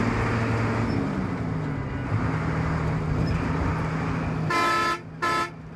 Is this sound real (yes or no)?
yes